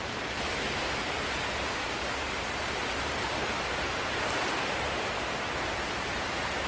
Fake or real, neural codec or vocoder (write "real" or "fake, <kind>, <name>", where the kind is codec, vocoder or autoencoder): real